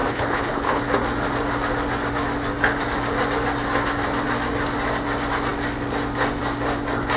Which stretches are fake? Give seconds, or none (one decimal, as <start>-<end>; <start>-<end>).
0.0-0.8